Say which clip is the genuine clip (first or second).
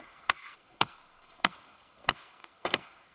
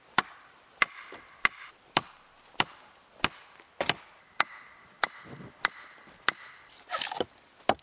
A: second